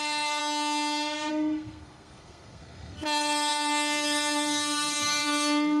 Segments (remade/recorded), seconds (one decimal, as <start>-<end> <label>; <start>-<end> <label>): 0.0-0.4 remade; 0.4-1.3 recorded; 1.3-5.8 remade